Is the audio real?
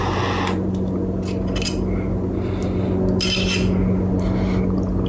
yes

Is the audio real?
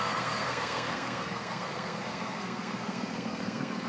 no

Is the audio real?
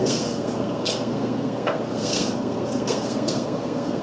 no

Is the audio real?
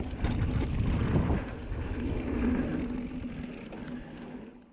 yes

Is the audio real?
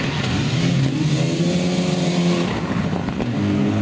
yes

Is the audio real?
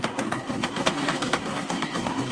no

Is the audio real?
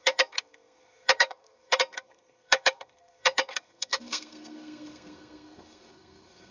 no